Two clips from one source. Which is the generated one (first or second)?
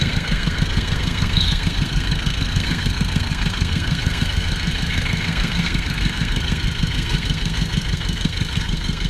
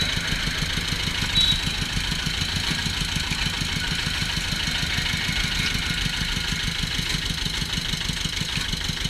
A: first